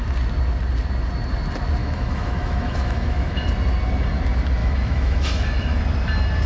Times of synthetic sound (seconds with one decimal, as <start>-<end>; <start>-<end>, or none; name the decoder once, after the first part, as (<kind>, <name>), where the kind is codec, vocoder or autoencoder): 1.8-3.5 (autoencoder, DAC-VAE); 4.6-5.8